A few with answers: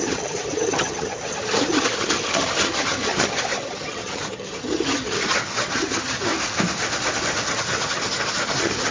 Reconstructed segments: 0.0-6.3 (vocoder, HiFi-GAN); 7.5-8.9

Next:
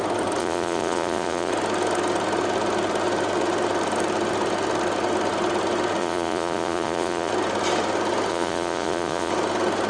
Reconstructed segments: 0.4-1.5 (vocoder, Vocos); 6.0-7.3; 8.3-9.3

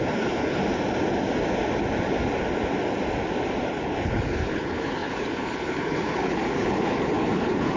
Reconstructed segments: 0.0-0.6 (codec, HILCodec); 3.7-7.8

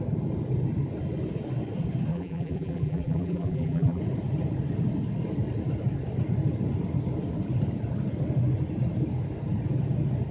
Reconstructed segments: 2.1-4.0 (vocoder, BigVGAN v2)

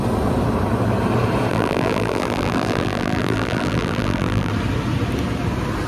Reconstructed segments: 1.5-4.5 (vocoder, BigVGAN v2)

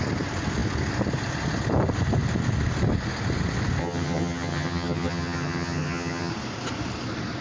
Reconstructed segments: 3.8-6.3 (vocoder, HiFi-GAN)